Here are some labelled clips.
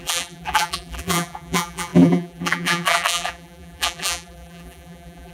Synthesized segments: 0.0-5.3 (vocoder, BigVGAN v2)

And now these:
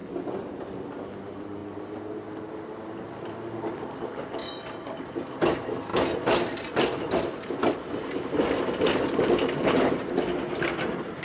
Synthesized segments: 0.6-1.6 (vocoder, BigVGAN v2); 2.9-4.4; 5.1-5.9; 7.7-11.2